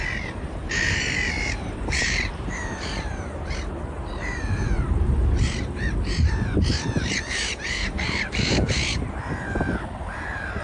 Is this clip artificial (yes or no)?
yes